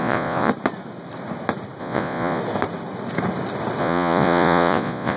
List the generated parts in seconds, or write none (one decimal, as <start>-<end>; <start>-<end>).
0.0-0.5; 1.8-2.4; 3.8-5.2